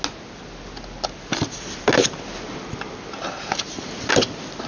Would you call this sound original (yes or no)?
yes